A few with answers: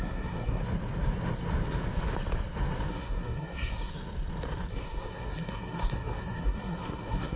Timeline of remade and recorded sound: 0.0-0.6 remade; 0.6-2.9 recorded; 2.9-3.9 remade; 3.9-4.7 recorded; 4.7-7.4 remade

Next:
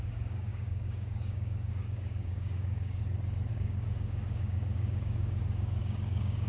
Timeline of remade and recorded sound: 0.0-3.0 remade; 3.0-3.5 recorded; 3.5-6.5 remade

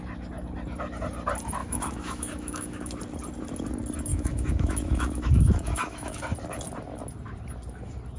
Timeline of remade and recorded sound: 0.0-1.6 recorded; 1.6-3.0 remade; 3.0-4.1 recorded; 4.1-6.2 remade; 6.2-8.2 recorded

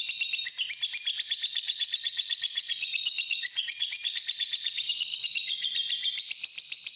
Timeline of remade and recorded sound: 0.0-1.5 recorded; 1.5-5.7 remade; 5.7-7.0 recorded

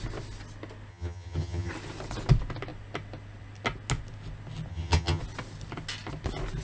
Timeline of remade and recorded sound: 0.0-0.9 recorded; 0.9-1.7 remade; 1.7-4.7 recorded; 4.7-5.2 remade; 5.2-6.6 recorded

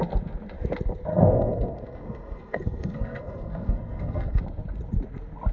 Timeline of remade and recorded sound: 0.0-1.1 recorded; 1.1-4.4 remade; 4.4-5.5 recorded

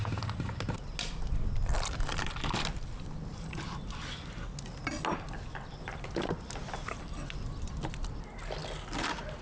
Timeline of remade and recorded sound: 0.0-9.4 recorded

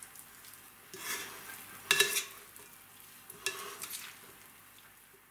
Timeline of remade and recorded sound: 0.0-5.3 recorded